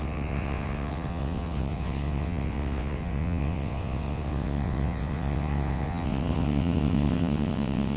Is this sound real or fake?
fake